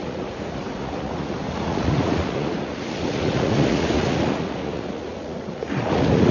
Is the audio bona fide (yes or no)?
no